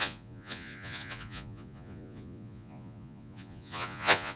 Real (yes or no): no